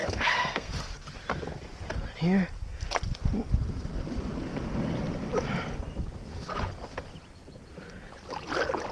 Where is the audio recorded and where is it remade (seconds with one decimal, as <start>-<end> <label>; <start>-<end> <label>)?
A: 0.0-0.7 remade; 0.7-8.9 recorded